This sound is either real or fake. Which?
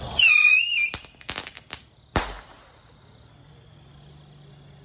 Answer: real